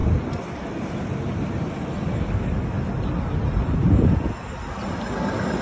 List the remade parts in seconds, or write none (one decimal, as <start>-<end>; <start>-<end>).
none